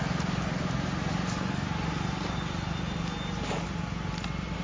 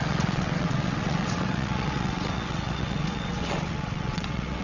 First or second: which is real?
first